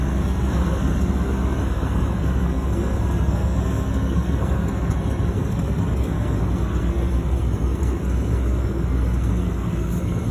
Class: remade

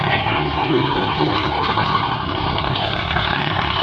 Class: remade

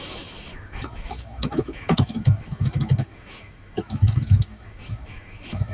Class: remade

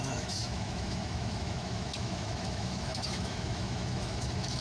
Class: remade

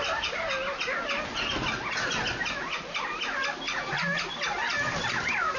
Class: recorded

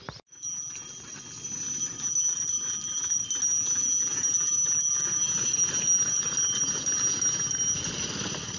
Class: recorded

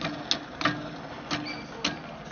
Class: recorded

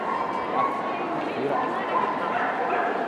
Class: recorded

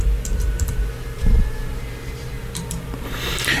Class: remade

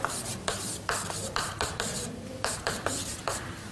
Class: remade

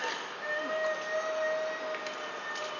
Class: recorded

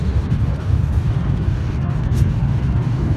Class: remade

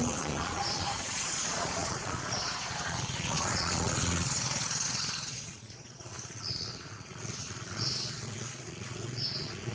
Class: remade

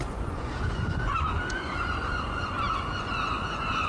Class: remade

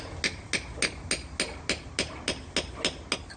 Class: recorded